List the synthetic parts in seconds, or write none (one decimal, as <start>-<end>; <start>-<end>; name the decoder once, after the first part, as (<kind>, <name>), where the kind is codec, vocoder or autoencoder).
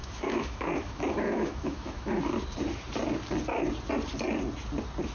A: 0.0-2.2 (autoencoder, DAC-VAE)